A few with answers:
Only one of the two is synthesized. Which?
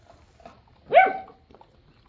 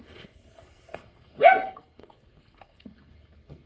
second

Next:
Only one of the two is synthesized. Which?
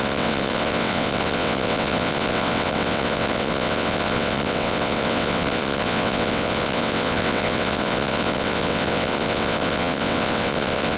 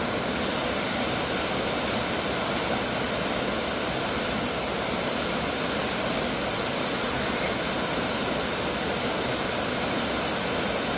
first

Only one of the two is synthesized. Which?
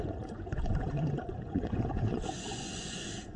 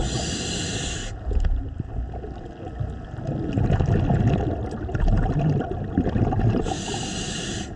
first